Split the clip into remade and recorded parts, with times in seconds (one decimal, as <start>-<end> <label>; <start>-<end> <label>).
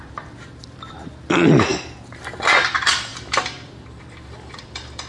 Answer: 0.0-5.1 remade